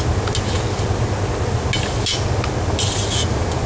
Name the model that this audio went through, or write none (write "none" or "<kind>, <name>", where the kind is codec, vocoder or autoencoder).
none